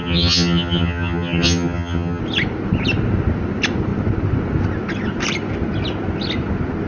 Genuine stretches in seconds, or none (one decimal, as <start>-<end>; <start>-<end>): 2.2-6.9